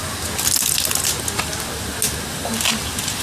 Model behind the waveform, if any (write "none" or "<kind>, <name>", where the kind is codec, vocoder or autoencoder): none